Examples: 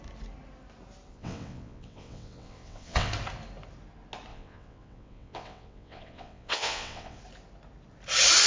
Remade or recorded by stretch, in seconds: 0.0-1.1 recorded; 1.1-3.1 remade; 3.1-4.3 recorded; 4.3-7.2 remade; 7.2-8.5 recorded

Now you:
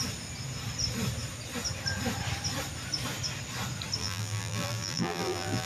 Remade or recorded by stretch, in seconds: 0.0-4.0 recorded; 4.0-5.7 remade

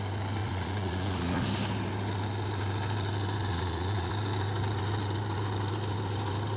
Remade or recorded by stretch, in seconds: 0.0-0.4 recorded; 0.4-1.4 remade; 1.4-3.5 recorded; 3.5-4.1 remade; 4.1-6.6 recorded

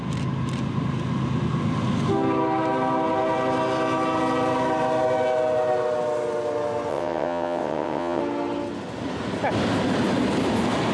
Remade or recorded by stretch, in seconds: 0.0-6.9 recorded; 6.9-8.2 remade; 8.2-10.9 recorded

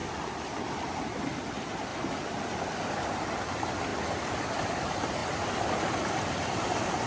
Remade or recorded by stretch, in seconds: 0.0-1.9 remade; 1.9-2.8 recorded; 2.8-5.2 remade; 5.2-5.8 recorded; 5.8-7.1 remade

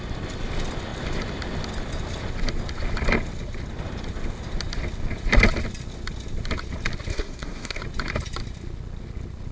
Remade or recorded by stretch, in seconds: 0.0-7.1 recorded; 7.1-7.8 remade; 7.8-9.5 recorded